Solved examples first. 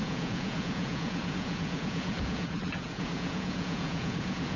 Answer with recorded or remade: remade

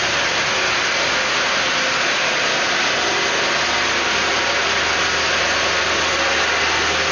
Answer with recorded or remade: recorded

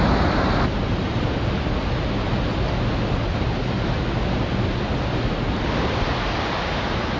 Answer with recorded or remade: recorded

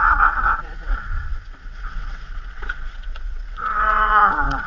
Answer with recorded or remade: remade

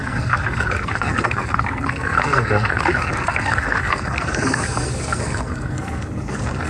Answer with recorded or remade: remade